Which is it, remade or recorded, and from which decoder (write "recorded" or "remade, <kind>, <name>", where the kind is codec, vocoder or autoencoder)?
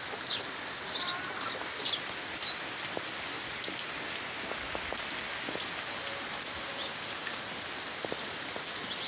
recorded